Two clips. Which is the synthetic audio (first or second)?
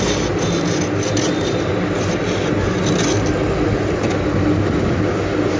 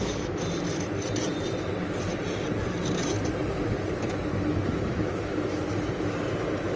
second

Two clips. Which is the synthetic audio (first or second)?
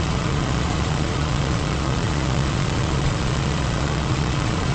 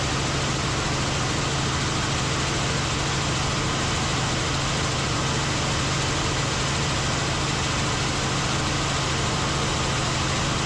first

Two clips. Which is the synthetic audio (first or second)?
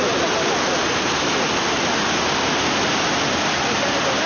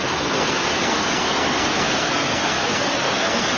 second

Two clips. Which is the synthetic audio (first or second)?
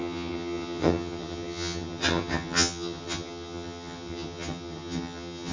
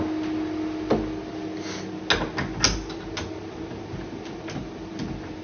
first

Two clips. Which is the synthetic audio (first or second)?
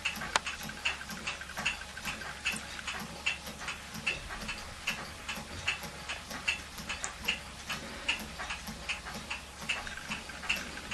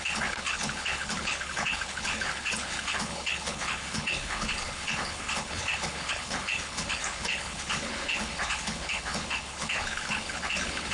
second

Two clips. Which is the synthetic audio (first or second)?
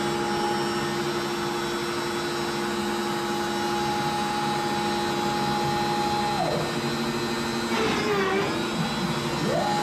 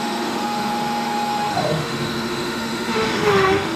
second